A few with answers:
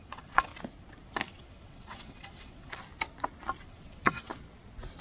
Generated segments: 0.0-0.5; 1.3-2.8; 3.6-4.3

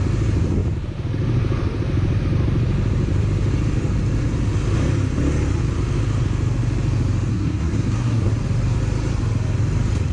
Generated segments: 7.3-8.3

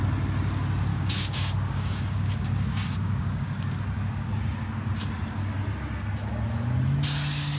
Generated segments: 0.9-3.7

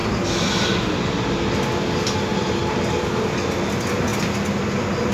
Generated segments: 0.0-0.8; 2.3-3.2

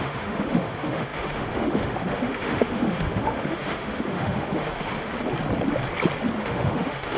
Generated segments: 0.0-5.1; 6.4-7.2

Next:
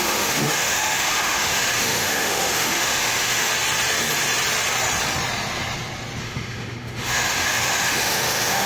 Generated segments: 0.0-3.5; 6.2-8.7

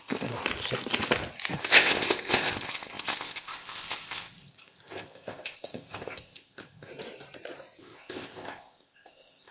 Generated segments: 0.0-0.4; 1.5-6.9; 7.8-9.5

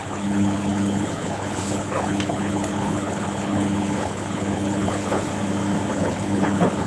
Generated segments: 0.0-5.3; 5.9-6.9